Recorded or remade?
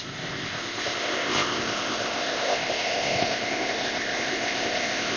remade